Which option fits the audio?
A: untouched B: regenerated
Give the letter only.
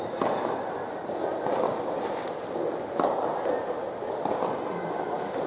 A